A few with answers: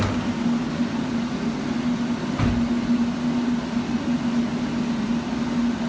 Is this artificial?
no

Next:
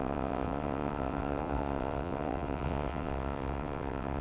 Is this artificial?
yes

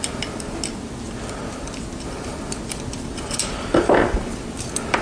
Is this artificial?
no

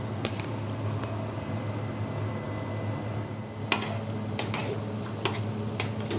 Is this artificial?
no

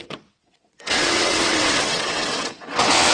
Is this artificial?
yes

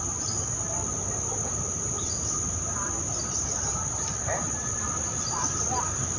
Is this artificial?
no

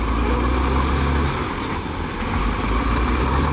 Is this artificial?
no